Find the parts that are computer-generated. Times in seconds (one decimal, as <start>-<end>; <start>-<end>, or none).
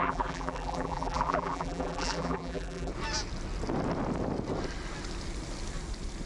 0.0-2.9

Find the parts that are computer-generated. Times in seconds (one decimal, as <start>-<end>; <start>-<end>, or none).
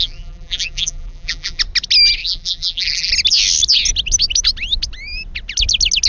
0.0-1.6; 2.2-3.1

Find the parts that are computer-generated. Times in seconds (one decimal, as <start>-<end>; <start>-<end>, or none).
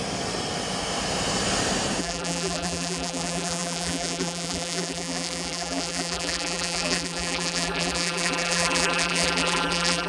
2.0-10.1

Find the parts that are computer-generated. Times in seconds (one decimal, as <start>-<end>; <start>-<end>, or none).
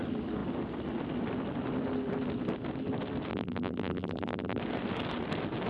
3.3-4.6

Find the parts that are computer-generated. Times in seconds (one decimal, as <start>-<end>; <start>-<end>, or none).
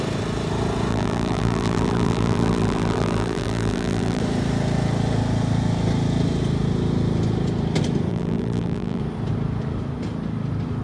0.9-4.2; 8.1-9.0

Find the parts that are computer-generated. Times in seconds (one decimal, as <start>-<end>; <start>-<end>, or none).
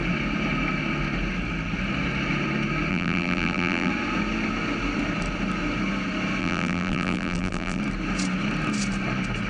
2.9-3.9; 6.4-7.8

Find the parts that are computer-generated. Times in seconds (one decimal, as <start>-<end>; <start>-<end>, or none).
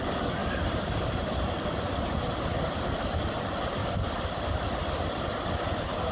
0.4-2.0; 3.8-4.9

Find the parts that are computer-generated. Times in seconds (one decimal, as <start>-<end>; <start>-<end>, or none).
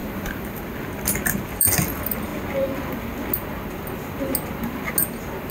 0.0-0.6